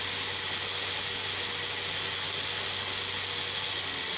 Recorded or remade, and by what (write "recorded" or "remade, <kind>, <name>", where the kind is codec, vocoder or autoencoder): recorded